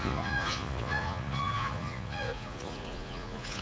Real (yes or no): no